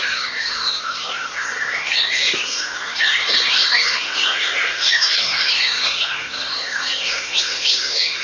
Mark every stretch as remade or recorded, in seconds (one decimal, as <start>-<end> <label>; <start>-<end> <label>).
0.0-8.2 remade